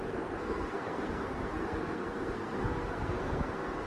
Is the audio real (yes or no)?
no